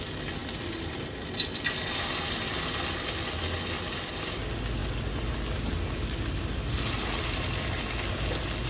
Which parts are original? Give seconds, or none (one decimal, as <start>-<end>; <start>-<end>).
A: 0.0-8.7